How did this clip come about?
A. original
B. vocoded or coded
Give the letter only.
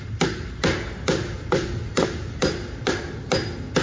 A